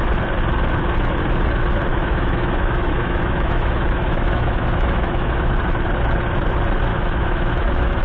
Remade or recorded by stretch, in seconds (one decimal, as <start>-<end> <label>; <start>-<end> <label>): 0.0-1.9 recorded; 1.9-5.5 remade; 5.5-6.9 recorded; 6.9-8.0 remade